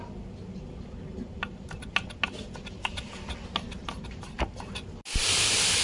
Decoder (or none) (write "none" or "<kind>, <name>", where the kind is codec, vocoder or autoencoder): none